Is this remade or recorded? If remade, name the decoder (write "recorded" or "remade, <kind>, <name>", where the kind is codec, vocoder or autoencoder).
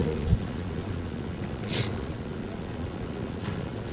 remade, vocoder, Vocos